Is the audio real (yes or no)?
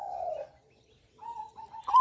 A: yes